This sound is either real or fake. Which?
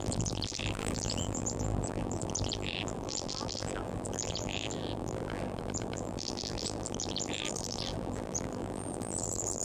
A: fake